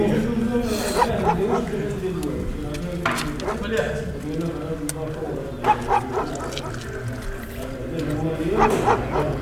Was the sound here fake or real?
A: real